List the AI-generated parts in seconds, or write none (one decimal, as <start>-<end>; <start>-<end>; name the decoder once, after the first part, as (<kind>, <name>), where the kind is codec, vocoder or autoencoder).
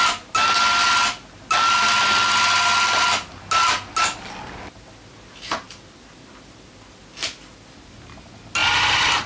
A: none